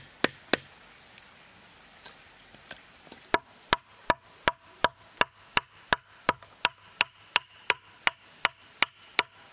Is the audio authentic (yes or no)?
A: yes